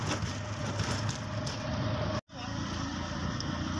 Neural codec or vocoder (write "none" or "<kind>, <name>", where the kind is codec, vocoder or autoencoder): none